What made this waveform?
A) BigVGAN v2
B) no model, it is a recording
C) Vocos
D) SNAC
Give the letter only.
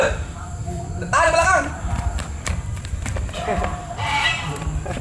A